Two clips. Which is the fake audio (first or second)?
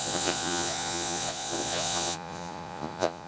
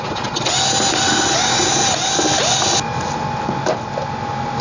first